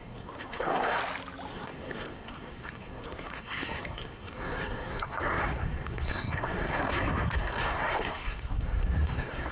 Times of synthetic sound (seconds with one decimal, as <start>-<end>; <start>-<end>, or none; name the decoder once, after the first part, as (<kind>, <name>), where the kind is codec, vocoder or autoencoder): 0.0-1.0 (codec, SNAC); 1.5-9.5